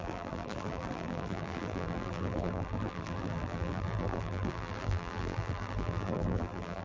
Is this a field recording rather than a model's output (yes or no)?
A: no